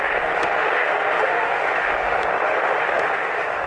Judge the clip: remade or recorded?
remade